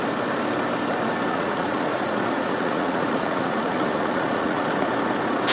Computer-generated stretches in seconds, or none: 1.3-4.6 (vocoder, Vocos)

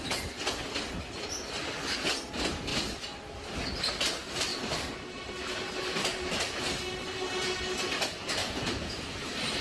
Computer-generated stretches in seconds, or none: 8.4-9.1 (vocoder, Vocos)

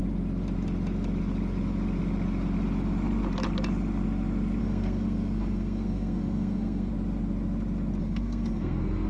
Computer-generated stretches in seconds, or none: 4.6-6.9 (codec, SNAC); 8.0-9.1